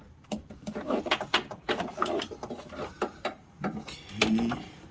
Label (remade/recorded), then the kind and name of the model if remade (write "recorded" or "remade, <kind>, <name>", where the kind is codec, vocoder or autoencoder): recorded